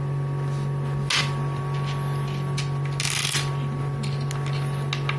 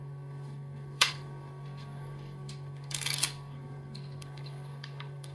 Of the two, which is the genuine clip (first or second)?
first